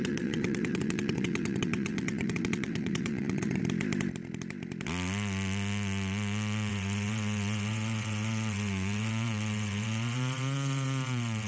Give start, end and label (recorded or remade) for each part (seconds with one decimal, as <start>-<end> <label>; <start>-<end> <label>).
0.0-3.6 remade; 3.6-6.7 recorded; 6.7-11.5 remade